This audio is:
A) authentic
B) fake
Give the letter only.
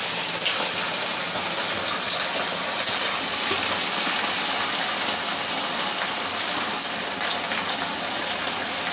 A